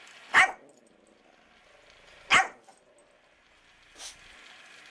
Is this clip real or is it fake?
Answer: real